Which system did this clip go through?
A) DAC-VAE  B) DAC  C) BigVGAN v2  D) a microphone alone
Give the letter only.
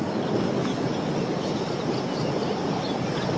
D